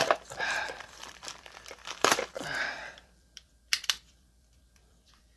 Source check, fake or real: fake